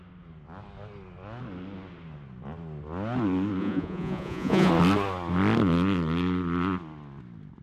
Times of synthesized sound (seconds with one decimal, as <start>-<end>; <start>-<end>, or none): 3.6-4.7